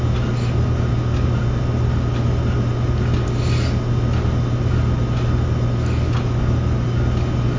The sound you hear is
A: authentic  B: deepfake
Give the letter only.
A